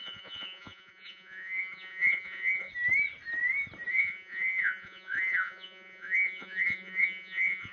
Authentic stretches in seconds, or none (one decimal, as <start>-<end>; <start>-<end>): 2.7-3.9